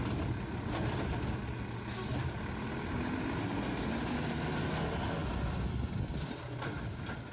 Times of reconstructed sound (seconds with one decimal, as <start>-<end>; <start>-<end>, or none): none